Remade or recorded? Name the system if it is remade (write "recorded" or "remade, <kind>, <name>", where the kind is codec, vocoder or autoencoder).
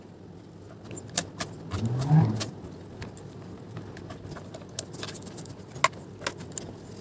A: recorded